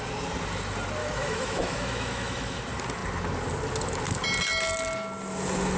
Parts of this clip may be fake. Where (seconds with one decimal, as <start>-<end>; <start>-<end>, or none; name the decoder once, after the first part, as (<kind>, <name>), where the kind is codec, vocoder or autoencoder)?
1.0-2.6 (autoencoder, DAC-VAE)